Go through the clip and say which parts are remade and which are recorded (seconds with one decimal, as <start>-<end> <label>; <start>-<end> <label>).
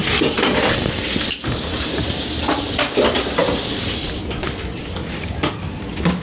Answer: 0.0-4.2 remade; 4.2-4.8 recorded; 4.8-6.2 remade